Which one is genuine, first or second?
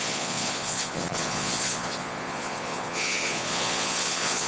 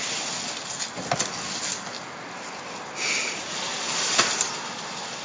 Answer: second